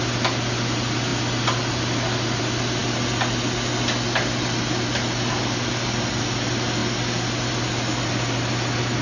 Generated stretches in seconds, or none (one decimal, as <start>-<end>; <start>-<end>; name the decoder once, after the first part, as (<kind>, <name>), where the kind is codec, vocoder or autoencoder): none